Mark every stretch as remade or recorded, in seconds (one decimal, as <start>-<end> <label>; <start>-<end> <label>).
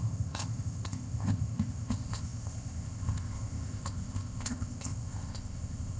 0.0-6.0 remade